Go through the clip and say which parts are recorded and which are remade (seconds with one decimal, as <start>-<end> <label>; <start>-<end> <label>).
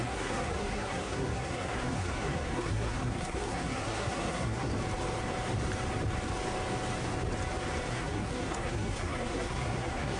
0.0-4.7 remade; 4.7-7.9 recorded; 7.9-10.2 remade